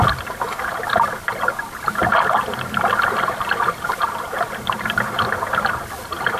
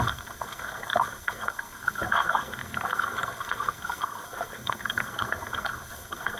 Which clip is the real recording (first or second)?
first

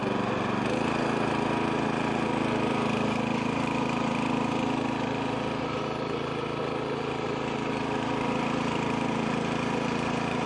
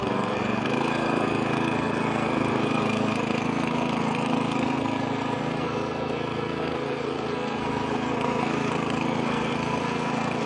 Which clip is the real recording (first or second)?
first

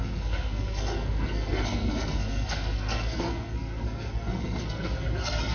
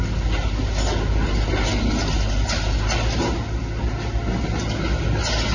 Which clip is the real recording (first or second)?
second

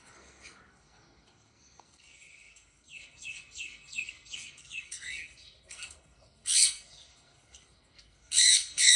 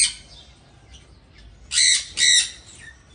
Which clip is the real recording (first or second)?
second